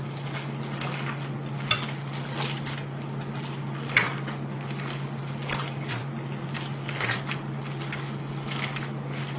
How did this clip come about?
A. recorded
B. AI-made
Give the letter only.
A